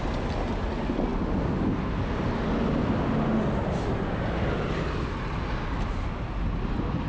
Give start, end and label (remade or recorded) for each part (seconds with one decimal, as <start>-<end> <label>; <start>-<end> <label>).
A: 0.0-7.1 recorded